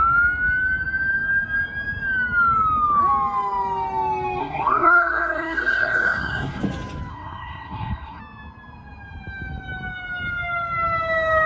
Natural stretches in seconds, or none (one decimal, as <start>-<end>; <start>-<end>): 0.0-4.4; 6.6-7.1; 8.2-11.5